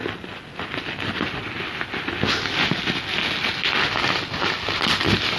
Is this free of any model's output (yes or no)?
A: yes